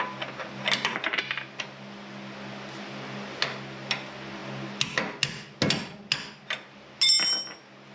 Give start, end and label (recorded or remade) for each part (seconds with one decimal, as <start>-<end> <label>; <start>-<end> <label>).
0.0-7.9 recorded